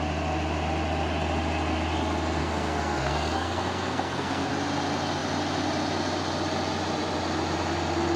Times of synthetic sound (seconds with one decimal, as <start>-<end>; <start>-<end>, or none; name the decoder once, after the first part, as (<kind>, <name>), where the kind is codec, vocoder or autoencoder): 2.4-4.5 (codec, SNAC)